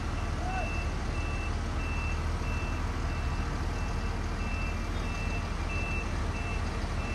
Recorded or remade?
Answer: recorded